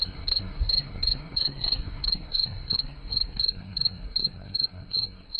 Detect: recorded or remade remade